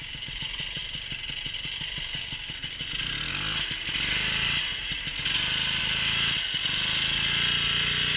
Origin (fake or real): real